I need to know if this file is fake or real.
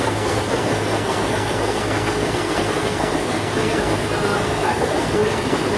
fake